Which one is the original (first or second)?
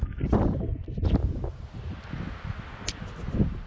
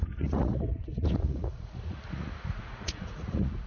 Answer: first